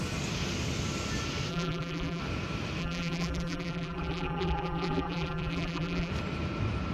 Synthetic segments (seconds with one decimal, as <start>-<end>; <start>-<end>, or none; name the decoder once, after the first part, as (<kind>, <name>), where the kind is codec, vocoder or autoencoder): 1.5-2.2 (vocoder, BigVGAN v2); 2.8-6.1